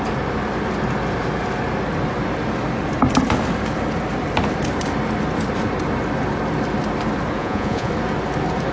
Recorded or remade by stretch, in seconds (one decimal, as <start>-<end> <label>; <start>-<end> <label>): 0.0-7.4 recorded; 7.4-7.9 remade; 7.9-8.7 recorded